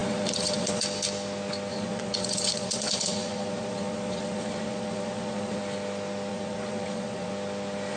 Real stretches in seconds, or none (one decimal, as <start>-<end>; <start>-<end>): 0.8-1.7; 5.6-6.3; 7.3-8.0